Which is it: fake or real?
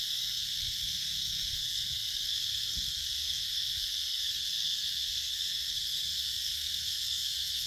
fake